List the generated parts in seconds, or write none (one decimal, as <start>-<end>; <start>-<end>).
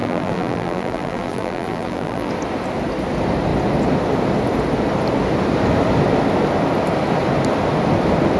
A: 0.0-2.3